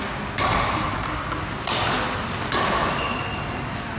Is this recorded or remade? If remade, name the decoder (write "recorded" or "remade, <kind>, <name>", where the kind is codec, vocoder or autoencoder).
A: recorded